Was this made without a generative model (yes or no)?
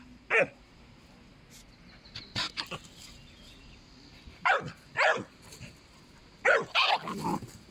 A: yes